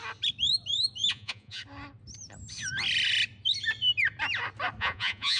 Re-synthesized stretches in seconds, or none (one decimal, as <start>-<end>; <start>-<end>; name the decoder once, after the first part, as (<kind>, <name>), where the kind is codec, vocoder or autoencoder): 1.1-1.6 (vocoder, Vocos); 4.8-5.4